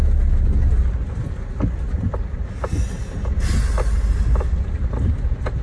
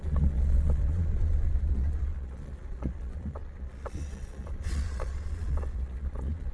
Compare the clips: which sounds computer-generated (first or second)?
second